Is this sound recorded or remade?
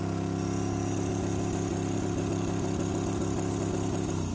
recorded